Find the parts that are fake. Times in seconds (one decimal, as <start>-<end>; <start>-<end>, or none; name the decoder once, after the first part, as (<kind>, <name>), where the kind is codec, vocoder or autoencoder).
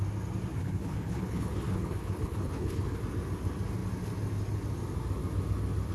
0.6-3.0 (codec, HILCodec)